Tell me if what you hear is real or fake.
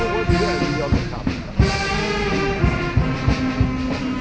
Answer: real